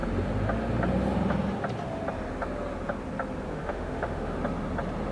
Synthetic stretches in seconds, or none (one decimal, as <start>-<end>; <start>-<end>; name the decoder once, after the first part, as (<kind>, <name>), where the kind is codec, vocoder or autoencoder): 3.5-4.4 (autoencoder, DAC-VAE)